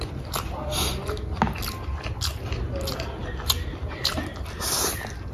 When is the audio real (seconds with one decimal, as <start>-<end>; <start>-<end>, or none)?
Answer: 0.0-5.3